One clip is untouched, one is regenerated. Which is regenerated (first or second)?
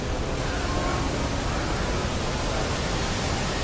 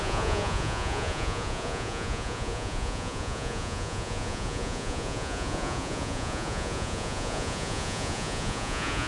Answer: second